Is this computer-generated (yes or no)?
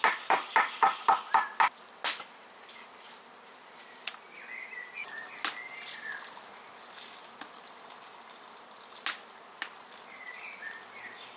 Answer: no